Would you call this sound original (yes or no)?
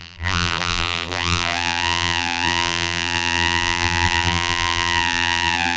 no